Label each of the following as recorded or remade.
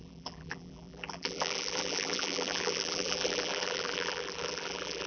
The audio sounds remade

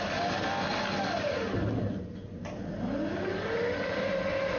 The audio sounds recorded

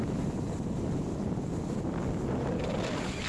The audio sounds recorded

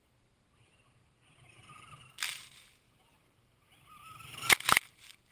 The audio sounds remade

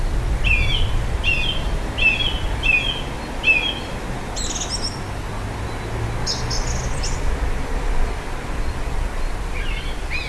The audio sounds recorded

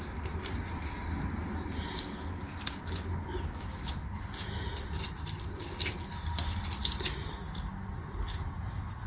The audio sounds recorded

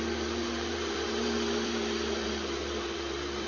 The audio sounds remade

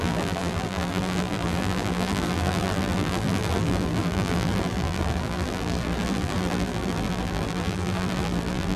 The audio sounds remade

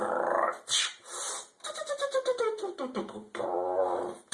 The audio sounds remade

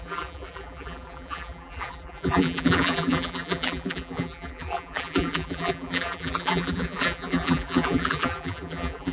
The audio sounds remade